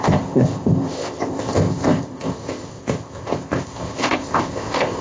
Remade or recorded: remade